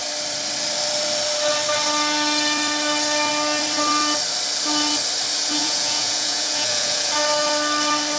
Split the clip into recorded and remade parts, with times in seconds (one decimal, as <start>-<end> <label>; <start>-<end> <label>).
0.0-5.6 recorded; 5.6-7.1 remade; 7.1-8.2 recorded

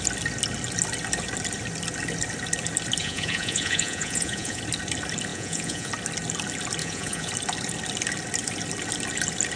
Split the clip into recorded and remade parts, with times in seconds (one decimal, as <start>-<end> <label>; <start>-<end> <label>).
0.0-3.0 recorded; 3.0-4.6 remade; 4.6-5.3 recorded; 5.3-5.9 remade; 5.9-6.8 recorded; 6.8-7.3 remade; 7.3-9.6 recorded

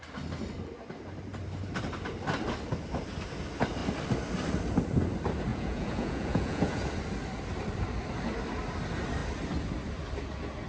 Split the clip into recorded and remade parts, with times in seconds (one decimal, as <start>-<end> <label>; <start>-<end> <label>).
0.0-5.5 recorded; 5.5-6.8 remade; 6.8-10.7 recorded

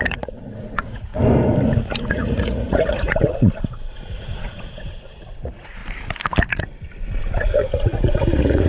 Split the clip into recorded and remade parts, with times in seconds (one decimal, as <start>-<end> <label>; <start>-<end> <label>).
0.0-1.1 remade; 1.1-2.1 recorded; 2.1-5.8 remade; 5.8-7.2 recorded; 7.2-8.7 remade

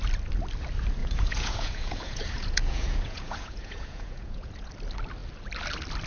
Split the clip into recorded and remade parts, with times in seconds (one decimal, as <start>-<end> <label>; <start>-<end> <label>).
0.0-1.0 recorded; 1.0-4.7 remade; 4.7-6.1 recorded

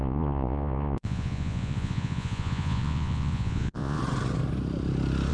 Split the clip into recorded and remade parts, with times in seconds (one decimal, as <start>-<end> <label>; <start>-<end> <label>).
0.0-4.0 remade; 4.0-5.3 recorded

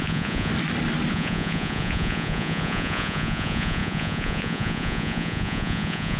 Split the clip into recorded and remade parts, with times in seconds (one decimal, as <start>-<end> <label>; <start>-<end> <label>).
0.0-0.5 remade; 0.5-1.1 recorded; 1.1-6.2 remade